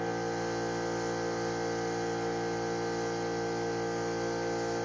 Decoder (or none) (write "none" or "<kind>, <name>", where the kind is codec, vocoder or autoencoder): none